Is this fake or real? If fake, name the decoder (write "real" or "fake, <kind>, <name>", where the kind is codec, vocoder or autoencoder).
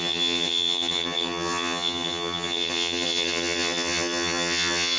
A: fake, vocoder, HiFi-GAN